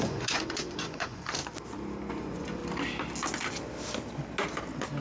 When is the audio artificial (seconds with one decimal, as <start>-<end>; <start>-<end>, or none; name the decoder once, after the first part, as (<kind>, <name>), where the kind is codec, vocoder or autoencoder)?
0.0-1.4 (vocoder, Vocos); 2.1-2.6